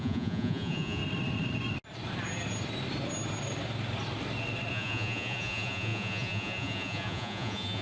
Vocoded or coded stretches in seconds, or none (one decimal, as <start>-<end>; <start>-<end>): 0.0-1.0; 4.7-7.8